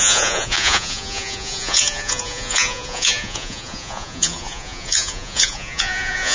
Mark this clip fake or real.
fake